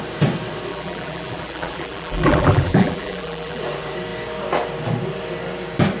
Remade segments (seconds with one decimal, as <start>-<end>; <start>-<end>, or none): 0.7-3.6